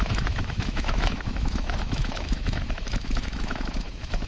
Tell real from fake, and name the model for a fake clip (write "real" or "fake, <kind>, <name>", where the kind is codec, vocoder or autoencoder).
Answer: fake, autoencoder, DAC-VAE